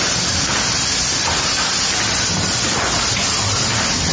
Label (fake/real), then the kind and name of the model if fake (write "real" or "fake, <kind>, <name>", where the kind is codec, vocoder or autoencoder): real